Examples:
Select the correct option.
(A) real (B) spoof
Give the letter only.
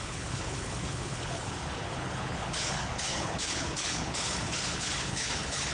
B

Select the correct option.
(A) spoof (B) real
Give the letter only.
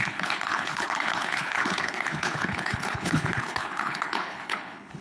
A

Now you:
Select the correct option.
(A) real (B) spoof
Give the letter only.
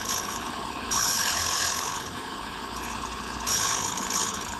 B